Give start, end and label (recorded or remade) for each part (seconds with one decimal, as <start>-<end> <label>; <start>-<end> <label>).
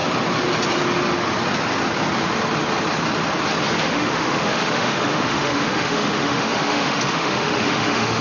0.0-3.8 recorded; 3.8-8.2 remade